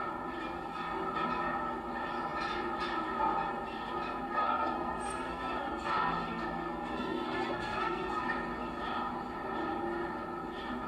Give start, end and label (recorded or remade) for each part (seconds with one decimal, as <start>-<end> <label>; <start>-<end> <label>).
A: 0.0-4.3 recorded; 4.3-8.2 remade; 8.2-10.9 recorded